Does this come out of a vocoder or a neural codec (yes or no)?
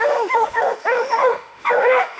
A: yes